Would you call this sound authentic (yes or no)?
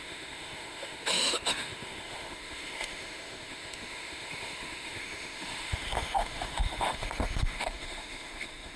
no